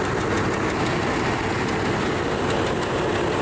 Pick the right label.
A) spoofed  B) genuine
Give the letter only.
B